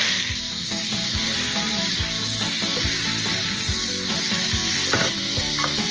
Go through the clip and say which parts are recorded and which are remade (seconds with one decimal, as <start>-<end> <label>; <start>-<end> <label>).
0.0-5.9 recorded